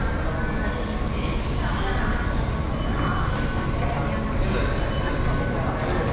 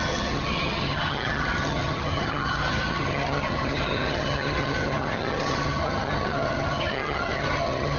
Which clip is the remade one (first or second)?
second